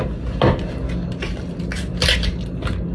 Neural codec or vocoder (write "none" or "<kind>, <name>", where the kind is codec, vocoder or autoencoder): none